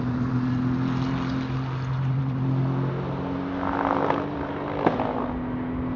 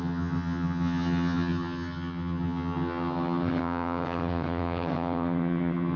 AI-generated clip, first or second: second